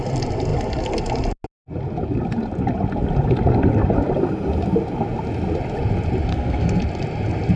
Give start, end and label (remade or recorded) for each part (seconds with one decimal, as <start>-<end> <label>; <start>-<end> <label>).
0.0-6.3 recorded; 6.3-6.8 remade; 6.8-7.6 recorded